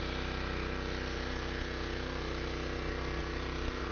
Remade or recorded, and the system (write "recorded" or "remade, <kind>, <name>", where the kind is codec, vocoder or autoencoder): recorded